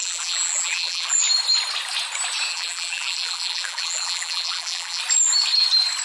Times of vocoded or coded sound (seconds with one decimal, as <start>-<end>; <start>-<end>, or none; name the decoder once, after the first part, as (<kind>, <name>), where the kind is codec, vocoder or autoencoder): 0.0-1.2 (vocoder, BigVGAN v2); 2.5-5.0